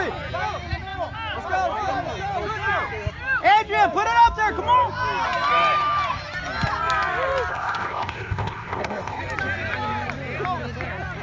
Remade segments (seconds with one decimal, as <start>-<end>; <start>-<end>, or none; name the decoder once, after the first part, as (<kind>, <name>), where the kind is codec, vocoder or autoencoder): 7.5-9.2 (codec, ZipCodec)